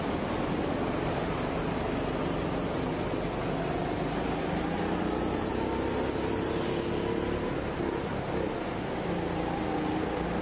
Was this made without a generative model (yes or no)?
yes